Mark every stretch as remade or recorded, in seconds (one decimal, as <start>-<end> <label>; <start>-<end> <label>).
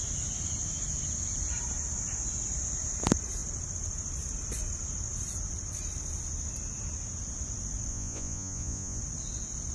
0.0-7.9 recorded; 7.9-9.0 remade; 9.0-9.7 recorded